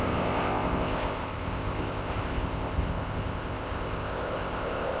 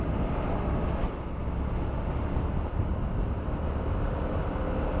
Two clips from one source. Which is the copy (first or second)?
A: first